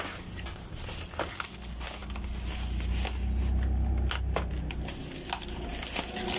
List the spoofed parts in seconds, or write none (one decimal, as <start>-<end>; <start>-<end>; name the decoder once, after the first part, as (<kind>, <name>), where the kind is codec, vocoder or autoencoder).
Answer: none